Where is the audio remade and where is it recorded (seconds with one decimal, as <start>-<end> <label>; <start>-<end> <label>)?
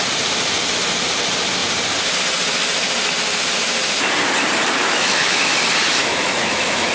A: 0.0-4.8 recorded; 4.8-5.5 remade; 5.5-6.0 recorded; 6.0-6.9 remade